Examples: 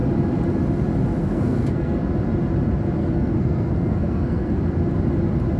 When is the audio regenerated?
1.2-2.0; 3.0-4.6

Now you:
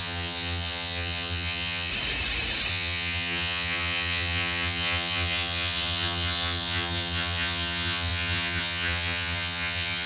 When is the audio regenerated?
0.0-1.9; 2.7-10.1

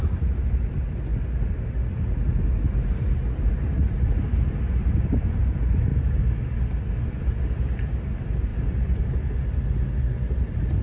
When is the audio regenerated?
none